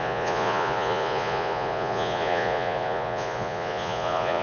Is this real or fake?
fake